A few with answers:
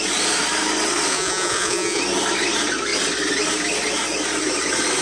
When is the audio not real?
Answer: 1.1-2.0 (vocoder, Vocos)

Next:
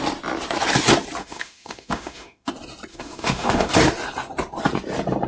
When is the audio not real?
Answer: 1.2-2.5 (autoencoder, DAC-VAE); 2.9-3.7

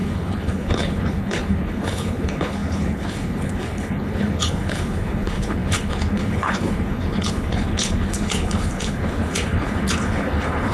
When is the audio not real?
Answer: 0.0-10.7 (codec, HILCodec)

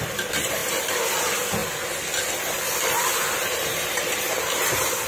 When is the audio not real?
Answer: none

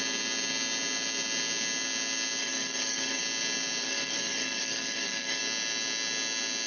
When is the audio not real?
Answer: 2.4-3.2 (codec, DAC); 3.8-5.4

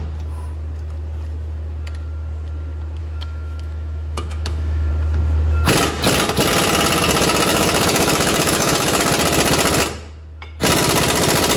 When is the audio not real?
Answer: 3.0-4.9 (autoencoder, DAC-VAE); 7.5-9.0

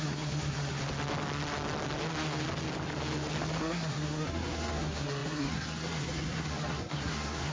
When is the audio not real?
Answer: 0.0-0.8 (codec, SNAC); 3.6-7.5

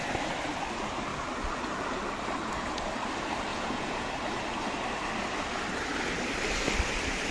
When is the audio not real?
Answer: 3.5-4.1 (vocoder, Vocos)